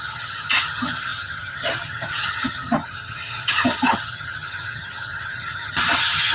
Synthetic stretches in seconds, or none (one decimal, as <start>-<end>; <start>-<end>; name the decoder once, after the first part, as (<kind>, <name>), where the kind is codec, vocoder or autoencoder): 0.0-6.3 (vocoder, HiFi-GAN)